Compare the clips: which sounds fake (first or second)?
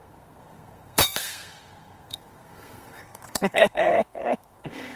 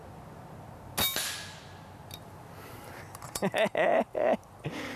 first